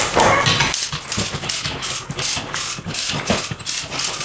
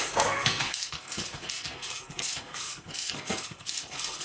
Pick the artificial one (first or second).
second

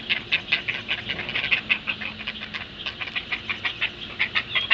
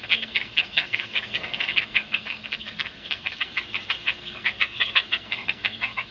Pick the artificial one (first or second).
second